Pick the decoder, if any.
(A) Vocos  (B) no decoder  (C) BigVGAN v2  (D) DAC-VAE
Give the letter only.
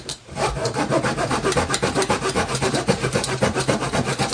C